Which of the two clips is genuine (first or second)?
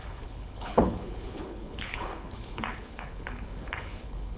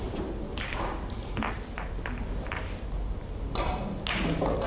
second